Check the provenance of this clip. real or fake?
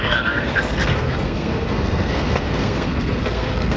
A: fake